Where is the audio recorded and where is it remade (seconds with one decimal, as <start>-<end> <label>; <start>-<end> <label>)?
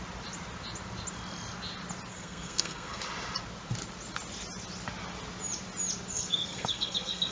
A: 0.0-2.1 recorded; 2.1-3.0 remade; 3.0-6.1 recorded; 6.1-7.3 remade